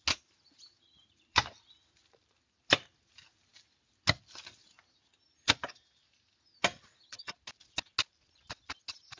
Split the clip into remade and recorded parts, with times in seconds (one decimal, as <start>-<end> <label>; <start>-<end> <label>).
0.0-9.2 recorded